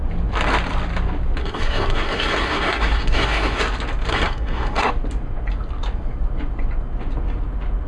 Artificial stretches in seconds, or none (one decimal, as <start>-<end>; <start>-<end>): 1.4-3.6; 4.1-4.9